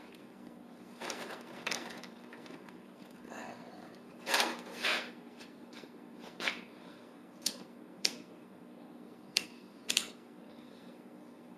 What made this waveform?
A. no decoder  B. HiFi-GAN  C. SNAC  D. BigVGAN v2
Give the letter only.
C